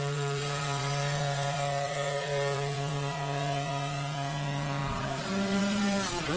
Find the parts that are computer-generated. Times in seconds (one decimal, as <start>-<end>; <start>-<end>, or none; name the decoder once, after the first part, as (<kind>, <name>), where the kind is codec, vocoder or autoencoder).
0.0-6.4 (vocoder, Vocos)

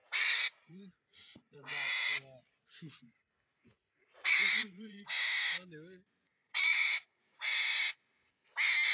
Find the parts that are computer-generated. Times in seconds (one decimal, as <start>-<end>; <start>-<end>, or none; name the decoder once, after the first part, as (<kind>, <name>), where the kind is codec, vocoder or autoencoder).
0.0-1.7 (vocoder, Vocos); 3.5-5.2; 6.4-7.6

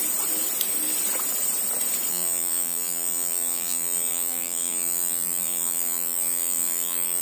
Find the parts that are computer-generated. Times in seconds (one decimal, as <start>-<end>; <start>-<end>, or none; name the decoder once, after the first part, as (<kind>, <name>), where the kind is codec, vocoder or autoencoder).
2.1-7.2 (vocoder, BigVGAN v2)

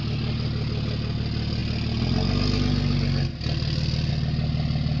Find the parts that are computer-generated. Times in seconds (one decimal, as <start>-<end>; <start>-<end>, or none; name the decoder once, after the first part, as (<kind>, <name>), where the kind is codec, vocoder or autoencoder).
none

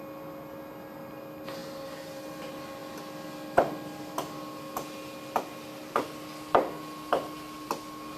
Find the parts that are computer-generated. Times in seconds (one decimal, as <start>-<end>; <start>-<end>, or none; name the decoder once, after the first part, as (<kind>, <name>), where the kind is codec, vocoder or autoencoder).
none

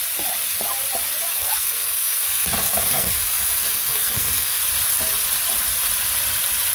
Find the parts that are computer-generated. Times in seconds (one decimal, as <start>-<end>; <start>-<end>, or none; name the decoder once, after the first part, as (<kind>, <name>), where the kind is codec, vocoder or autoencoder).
1.3-4.6 (codec, SNAC)